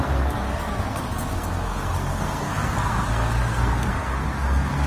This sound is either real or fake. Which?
fake